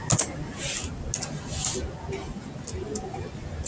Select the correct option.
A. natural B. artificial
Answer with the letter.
A